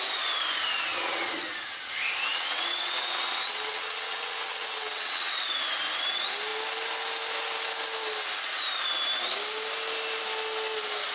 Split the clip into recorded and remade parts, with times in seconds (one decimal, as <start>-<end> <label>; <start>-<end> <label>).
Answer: 0.0-0.9 recorded; 0.9-1.9 remade; 1.9-2.3 recorded; 2.3-5.5 remade; 5.5-11.1 recorded